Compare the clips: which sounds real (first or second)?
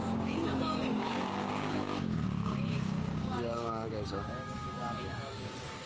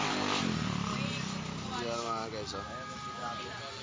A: second